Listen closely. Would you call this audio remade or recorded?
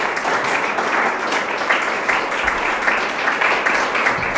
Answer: recorded